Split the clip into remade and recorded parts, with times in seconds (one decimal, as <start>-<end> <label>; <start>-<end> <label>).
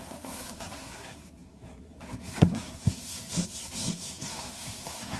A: 0.0-5.2 remade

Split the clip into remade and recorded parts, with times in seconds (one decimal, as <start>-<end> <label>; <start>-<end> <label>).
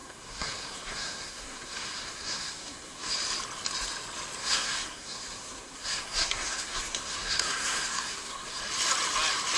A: 0.0-3.1 remade; 3.1-4.4 recorded; 4.4-8.6 remade; 8.6-9.6 recorded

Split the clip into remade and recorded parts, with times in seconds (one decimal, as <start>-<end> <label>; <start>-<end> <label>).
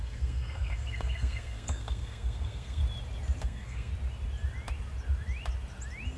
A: 0.0-2.8 remade; 2.8-3.4 recorded; 3.4-3.9 remade; 3.9-6.2 recorded